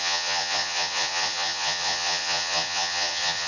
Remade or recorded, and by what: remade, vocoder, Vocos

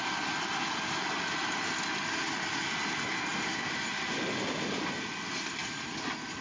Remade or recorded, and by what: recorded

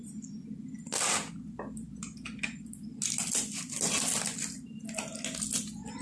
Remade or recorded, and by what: recorded